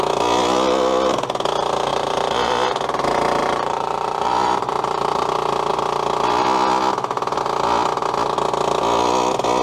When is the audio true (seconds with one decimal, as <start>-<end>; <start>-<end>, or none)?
0.0-1.9; 2.5-3.4; 5.3-9.6